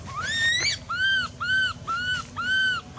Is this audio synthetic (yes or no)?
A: no